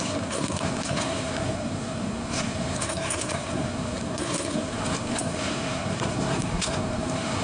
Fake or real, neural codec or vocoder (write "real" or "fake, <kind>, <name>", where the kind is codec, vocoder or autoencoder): fake, codec, SNAC